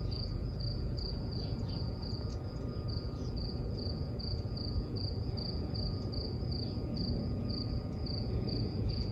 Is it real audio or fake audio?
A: fake